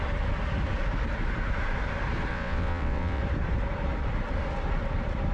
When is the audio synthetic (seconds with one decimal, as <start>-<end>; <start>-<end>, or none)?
2.3-3.2